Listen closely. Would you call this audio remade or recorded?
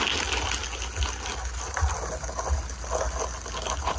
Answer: recorded